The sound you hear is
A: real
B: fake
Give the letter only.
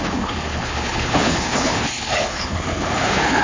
B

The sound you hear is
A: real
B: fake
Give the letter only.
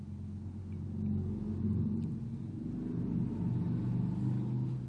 A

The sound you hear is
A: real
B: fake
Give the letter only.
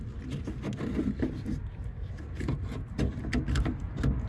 A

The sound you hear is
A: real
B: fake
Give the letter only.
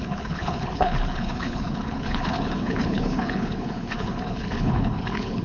B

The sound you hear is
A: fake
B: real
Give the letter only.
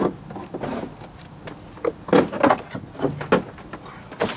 B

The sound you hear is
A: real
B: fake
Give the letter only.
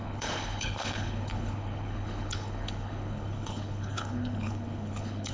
B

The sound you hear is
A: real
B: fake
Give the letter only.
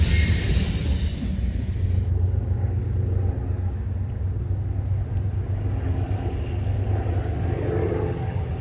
A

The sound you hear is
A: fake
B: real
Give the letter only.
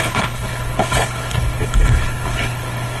A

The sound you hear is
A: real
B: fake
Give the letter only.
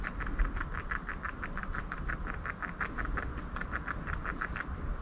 A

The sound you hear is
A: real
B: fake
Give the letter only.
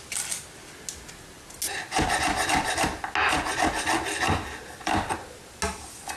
A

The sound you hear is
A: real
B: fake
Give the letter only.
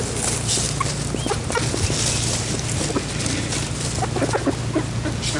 A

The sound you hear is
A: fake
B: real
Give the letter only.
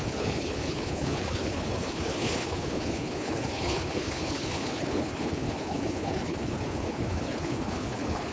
A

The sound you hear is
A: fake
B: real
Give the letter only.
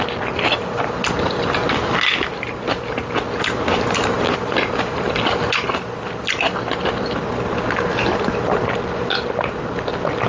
B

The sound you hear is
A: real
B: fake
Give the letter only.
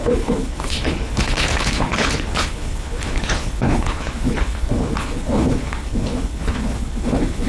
B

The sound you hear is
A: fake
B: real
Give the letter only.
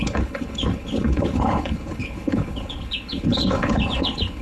A